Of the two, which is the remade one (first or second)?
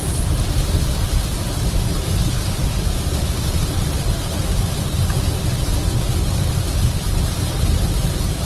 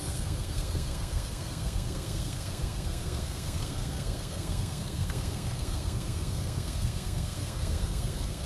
second